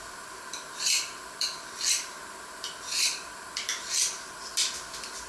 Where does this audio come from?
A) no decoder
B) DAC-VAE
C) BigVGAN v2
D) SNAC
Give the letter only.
C